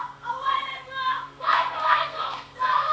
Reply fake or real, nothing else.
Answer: fake